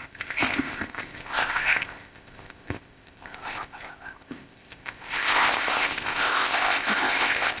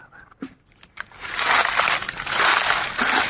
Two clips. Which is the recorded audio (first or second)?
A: second